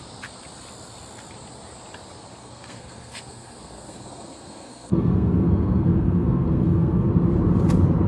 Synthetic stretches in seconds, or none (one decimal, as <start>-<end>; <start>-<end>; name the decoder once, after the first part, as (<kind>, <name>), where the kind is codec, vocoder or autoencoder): 2.4-7.1 (codec, SNAC)

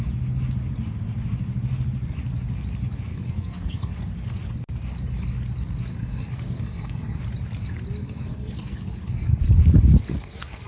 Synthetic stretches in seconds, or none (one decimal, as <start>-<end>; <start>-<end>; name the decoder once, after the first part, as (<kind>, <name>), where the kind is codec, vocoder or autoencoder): 3.1-3.9 (codec, SNAC); 6.0-7.2; 8.0-9.4; 10.1-10.7